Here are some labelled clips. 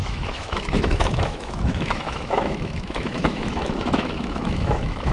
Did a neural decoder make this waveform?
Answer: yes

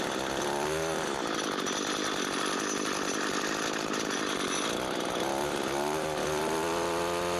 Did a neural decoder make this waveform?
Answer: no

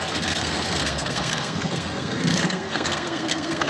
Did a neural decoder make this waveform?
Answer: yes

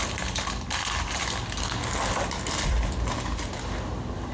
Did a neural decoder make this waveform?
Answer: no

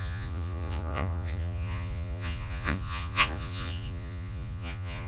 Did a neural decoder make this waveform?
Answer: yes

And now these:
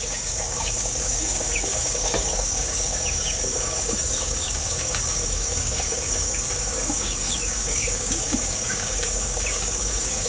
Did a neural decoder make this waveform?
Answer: yes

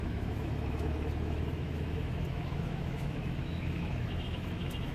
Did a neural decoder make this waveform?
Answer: yes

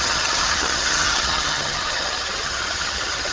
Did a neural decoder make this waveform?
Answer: yes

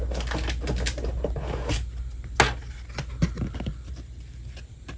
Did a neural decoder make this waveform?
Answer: no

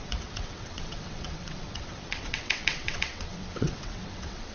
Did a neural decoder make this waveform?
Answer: yes